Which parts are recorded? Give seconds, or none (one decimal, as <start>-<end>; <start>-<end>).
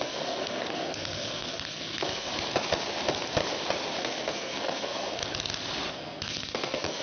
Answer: 2.3-4.0; 5.2-5.9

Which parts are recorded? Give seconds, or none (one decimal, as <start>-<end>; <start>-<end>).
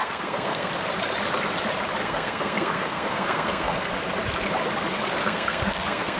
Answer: 0.7-2.0; 3.9-5.2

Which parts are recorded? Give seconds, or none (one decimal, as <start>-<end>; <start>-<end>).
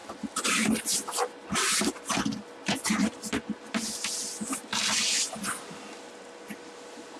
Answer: 0.0-7.2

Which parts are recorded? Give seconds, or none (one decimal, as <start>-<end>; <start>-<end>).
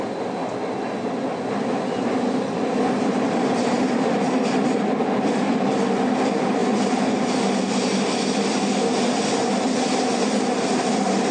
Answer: 0.0-11.3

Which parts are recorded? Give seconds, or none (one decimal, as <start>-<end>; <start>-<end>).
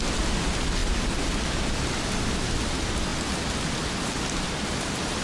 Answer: 0.0-5.2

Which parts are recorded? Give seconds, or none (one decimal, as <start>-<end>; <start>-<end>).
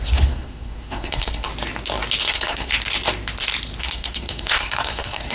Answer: 1.5-2.2; 2.7-3.8